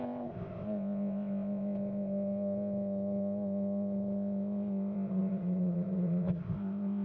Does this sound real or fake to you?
fake